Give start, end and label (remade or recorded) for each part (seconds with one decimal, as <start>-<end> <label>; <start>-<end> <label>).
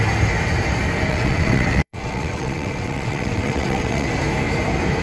0.0-1.1 recorded; 1.1-4.1 remade; 4.1-5.0 recorded